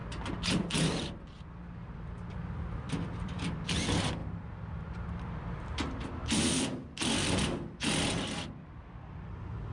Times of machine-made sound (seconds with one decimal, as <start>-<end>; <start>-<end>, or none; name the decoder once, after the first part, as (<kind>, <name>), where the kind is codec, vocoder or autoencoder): 0.8-9.7 (vocoder, BigVGAN v2)